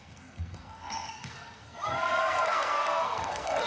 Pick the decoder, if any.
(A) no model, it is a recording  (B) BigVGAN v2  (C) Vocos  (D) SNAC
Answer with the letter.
D